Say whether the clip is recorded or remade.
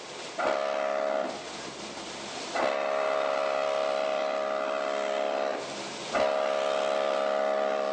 remade